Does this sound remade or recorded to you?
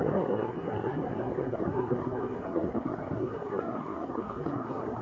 remade